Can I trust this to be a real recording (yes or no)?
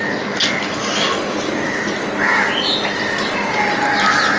yes